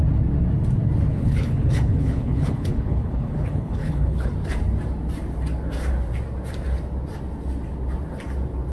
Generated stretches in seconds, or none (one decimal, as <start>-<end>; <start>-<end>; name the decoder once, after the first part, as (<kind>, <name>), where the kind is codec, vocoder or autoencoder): 1.1-4.3 (codec, HILCodec)